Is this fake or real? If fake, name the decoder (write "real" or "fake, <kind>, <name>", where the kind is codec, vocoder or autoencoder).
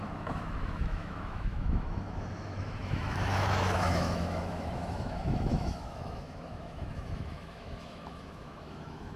fake, autoencoder, DAC-VAE